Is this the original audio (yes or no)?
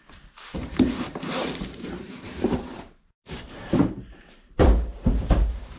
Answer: no